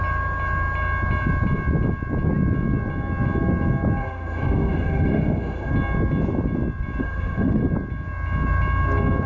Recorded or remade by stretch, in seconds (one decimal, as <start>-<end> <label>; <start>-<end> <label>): 0.0-4.0 recorded; 4.0-5.7 remade; 5.7-7.0 recorded; 7.0-7.6 remade; 7.6-9.3 recorded